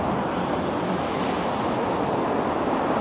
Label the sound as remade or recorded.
recorded